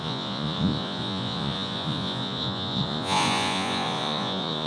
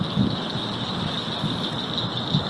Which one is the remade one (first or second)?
first